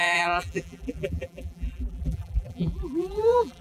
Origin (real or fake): fake